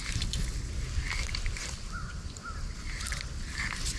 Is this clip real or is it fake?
real